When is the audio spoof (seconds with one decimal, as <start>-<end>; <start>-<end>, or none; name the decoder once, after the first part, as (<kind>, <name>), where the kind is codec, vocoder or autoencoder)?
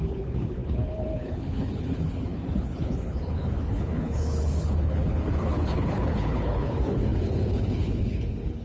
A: 0.0-8.6 (codec, HILCodec)